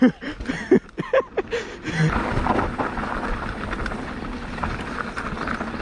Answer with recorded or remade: recorded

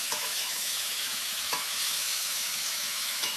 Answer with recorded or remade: remade